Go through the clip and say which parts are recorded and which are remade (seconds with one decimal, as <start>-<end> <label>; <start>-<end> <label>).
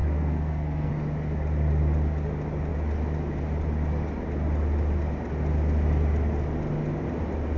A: 0.0-0.9 remade; 0.9-7.6 recorded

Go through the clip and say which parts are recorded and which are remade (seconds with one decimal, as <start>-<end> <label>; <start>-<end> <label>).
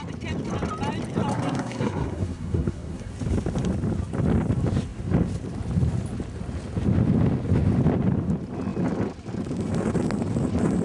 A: 0.0-1.3 recorded; 1.3-3.1 remade; 3.1-10.8 recorded